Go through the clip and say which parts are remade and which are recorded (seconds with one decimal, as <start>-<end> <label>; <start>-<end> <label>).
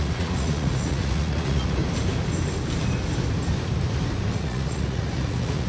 0.0-1.8 remade; 1.8-4.3 recorded; 4.3-5.7 remade